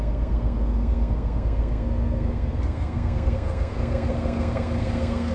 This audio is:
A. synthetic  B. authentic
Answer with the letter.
A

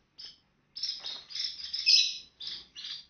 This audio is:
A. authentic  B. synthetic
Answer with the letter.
A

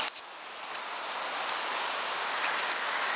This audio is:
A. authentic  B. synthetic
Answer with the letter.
A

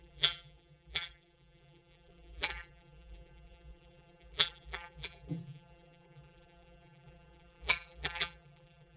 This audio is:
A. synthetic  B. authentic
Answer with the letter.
A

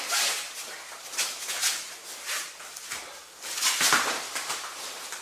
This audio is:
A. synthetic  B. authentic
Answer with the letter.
B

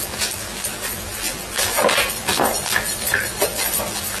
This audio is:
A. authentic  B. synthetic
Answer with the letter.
B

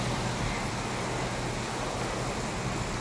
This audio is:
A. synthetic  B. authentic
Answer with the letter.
B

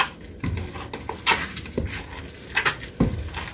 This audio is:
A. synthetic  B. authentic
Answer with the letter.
B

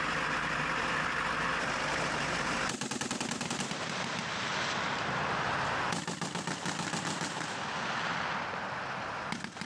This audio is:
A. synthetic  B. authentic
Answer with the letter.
B